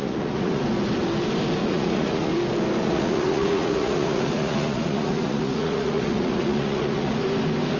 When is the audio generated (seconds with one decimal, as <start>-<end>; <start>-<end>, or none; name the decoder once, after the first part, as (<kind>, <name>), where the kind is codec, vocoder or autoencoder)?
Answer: 0.0-0.6 (vocoder, Vocos); 1.6-2.3; 2.8-7.2